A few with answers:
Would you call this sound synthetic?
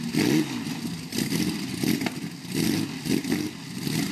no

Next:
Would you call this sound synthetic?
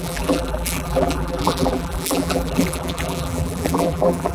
yes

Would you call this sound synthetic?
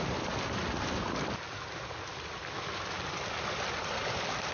no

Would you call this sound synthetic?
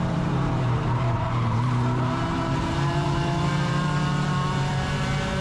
yes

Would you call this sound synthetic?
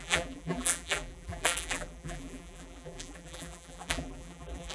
yes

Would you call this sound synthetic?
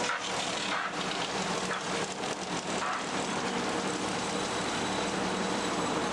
yes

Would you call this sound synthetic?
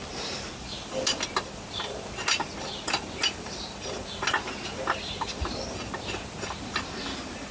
no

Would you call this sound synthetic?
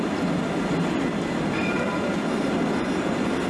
no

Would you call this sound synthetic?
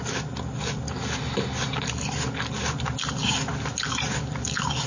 no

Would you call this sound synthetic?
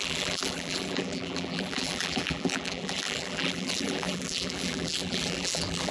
yes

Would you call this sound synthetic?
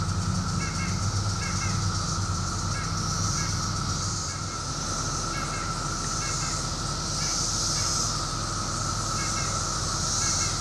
no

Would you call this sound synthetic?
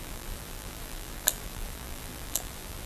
yes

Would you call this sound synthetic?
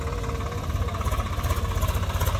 no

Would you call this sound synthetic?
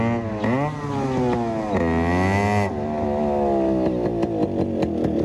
no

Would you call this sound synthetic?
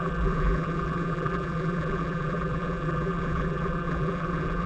yes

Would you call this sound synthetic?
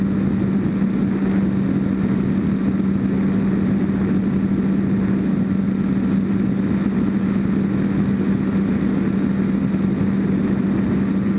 no